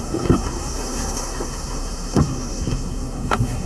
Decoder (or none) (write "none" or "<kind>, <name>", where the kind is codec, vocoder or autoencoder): codec, SNAC